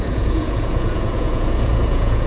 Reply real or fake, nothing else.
fake